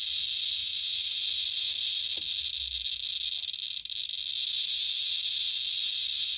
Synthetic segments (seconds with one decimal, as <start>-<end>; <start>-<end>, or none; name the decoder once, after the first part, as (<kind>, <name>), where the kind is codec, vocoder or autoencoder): 0.6-1.2 (vocoder, BigVGAN v2)